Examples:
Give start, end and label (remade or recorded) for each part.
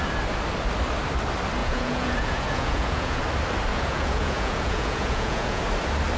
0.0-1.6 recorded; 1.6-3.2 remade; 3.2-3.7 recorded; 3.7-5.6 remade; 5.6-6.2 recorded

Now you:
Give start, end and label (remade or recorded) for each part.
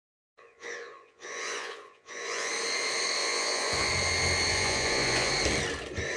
0.0-2.5 remade; 2.5-3.2 recorded; 3.2-3.9 remade; 3.9-4.5 recorded; 4.5-5.3 remade; 5.3-6.2 recorded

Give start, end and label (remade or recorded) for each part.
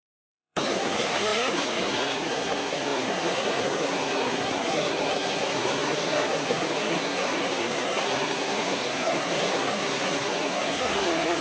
0.0-11.4 remade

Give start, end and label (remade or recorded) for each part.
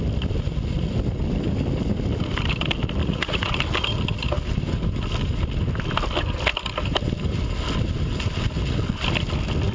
0.0-3.0 recorded; 3.0-3.5 remade; 3.5-9.7 recorded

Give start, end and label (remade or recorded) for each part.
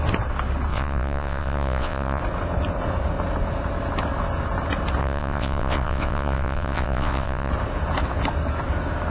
0.0-0.7 recorded; 0.7-2.2 remade; 2.2-5.0 recorded; 5.0-7.5 remade; 7.5-9.1 recorded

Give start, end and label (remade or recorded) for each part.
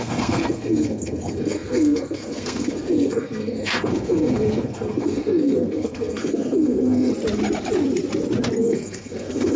0.0-7.1 remade; 7.1-8.6 recorded; 8.6-9.6 remade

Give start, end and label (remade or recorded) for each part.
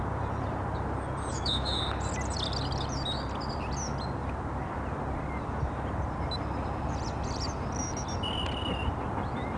0.0-1.3 recorded; 1.3-1.8 remade; 1.8-9.6 recorded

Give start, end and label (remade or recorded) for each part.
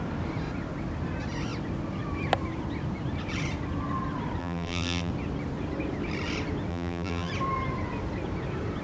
0.0-4.4 recorded; 4.4-5.1 remade; 5.1-6.7 recorded; 6.7-7.3 remade; 7.3-8.8 recorded